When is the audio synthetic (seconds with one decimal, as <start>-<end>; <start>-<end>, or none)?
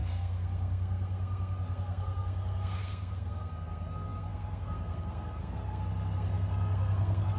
0.0-7.4